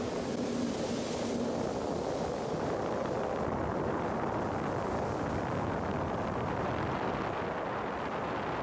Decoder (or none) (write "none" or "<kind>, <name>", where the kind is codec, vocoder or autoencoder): none